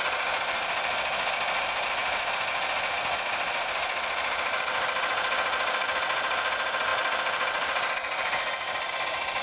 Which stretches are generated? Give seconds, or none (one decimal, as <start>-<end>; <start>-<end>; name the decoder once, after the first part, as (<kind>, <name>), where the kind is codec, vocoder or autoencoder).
none